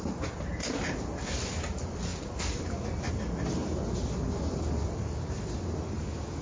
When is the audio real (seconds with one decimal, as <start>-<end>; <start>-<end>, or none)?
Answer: 0.0-6.4